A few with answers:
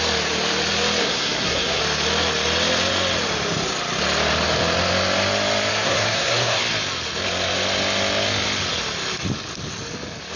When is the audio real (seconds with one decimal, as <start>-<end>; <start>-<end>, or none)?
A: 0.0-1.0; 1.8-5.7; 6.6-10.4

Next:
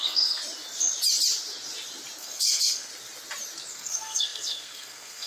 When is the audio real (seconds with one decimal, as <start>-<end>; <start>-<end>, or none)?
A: 0.4-2.2; 2.9-3.7

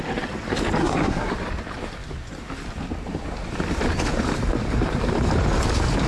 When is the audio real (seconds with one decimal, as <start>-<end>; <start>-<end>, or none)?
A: 0.0-0.8; 1.3-6.1

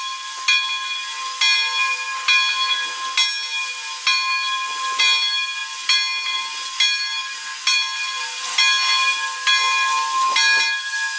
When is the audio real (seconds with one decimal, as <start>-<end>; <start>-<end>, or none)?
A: 0.0-11.2

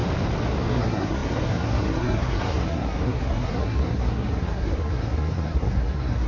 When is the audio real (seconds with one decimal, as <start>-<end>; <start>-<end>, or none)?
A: 0.0-0.6

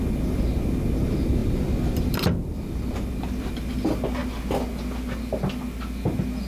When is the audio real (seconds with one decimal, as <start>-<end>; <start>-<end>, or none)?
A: 0.0-6.5

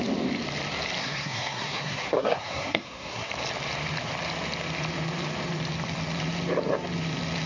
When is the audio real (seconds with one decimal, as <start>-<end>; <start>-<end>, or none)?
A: 0.0-1.0; 3.3-7.5

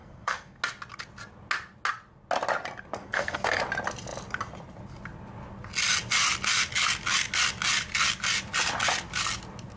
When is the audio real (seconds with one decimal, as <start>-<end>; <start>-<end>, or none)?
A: 0.6-3.0; 3.6-9.8